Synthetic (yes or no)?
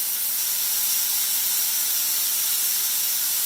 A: no